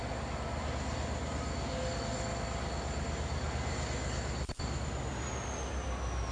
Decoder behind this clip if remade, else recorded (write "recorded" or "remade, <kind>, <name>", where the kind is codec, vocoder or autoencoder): recorded